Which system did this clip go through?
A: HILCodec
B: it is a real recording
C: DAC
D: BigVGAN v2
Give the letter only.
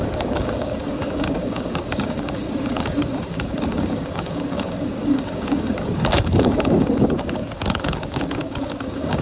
C